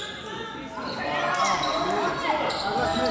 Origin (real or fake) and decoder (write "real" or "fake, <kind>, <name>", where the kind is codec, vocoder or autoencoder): real